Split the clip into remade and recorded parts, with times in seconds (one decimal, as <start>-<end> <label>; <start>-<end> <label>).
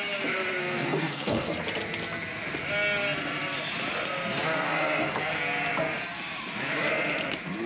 0.0-0.6 recorded; 0.6-1.5 remade; 1.5-7.7 recorded